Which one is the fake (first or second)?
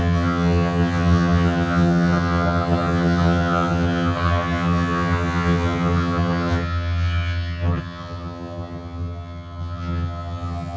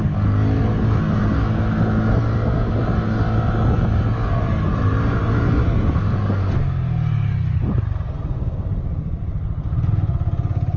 first